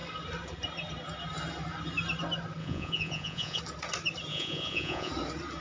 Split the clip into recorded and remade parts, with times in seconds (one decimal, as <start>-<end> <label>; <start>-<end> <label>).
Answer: 0.0-2.6 recorded; 2.6-3.6 remade; 3.6-4.3 recorded; 4.3-5.1 remade; 5.1-5.6 recorded

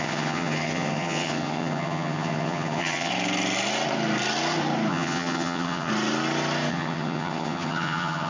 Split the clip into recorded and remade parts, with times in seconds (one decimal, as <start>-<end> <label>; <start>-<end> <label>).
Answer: 0.0-3.1 remade; 3.1-4.9 recorded; 4.9-5.9 remade; 5.9-6.7 recorded; 6.7-8.3 remade

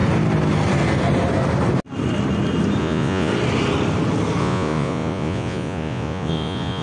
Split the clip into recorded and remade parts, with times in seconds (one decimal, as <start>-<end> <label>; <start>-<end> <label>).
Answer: 0.0-2.8 recorded; 2.8-3.3 remade; 3.3-4.4 recorded; 4.4-6.8 remade

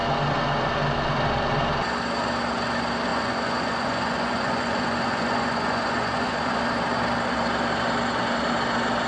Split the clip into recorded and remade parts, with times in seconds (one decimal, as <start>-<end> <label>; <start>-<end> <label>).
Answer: 0.0-3.1 recorded; 3.1-6.6 remade; 6.6-9.1 recorded

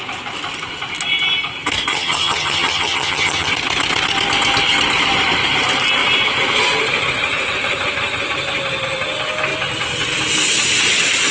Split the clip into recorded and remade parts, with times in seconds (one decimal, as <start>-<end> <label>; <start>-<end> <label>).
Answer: 0.0-1.9 recorded; 1.9-3.5 remade; 3.5-11.3 recorded

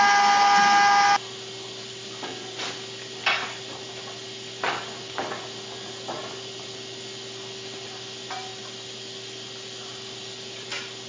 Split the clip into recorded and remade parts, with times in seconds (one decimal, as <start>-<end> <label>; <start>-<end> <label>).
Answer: 0.0-11.1 recorded